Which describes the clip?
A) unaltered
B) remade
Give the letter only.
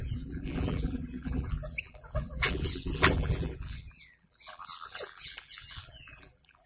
B